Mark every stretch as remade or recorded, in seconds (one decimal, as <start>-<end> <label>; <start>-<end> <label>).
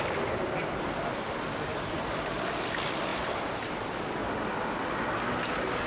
0.0-1.7 recorded; 1.7-2.4 remade; 2.4-3.1 recorded; 3.1-4.0 remade; 4.0-5.9 recorded